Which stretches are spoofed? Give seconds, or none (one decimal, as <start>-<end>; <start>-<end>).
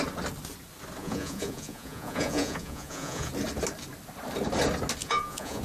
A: 1.0-3.3; 5.0-5.6